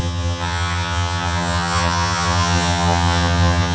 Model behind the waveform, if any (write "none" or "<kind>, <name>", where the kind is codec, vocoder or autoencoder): vocoder, HiFi-GAN